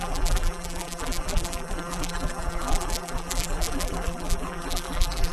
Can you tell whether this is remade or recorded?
remade